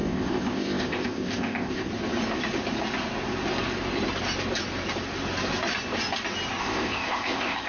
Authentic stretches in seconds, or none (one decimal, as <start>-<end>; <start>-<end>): 1.9-6.6